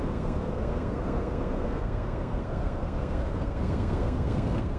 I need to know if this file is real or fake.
fake